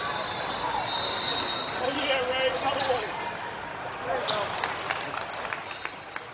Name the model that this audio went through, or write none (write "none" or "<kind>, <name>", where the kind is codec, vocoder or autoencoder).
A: none